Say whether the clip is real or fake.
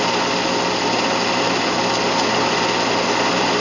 real